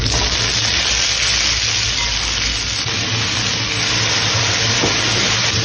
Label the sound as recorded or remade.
recorded